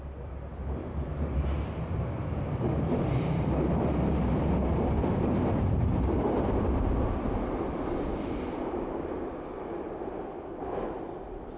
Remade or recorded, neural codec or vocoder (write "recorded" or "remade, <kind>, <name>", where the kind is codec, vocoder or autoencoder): recorded